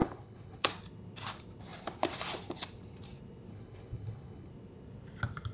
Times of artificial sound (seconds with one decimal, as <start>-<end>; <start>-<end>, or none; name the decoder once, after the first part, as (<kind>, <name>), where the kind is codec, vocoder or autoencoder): 0.0-0.7 (codec, HILCodec); 3.5-4.5